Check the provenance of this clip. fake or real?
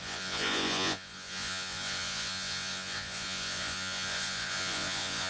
fake